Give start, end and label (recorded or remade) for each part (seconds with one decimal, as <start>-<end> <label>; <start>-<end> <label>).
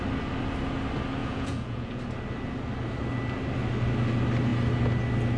0.0-1.2 recorded; 1.2-2.0 remade; 2.0-5.4 recorded